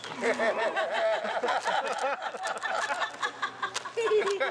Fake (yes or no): no